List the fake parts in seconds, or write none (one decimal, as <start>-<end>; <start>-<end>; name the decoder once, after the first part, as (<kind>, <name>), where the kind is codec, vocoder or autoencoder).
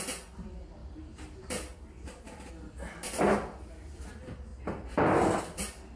0.8-2.5 (vocoder, BigVGAN v2)